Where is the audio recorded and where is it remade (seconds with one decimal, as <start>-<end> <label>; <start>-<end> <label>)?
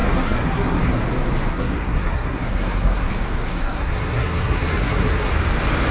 0.0-1.0 remade; 1.0-1.5 recorded; 1.5-3.1 remade; 3.1-3.5 recorded; 3.5-5.3 remade; 5.3-5.9 recorded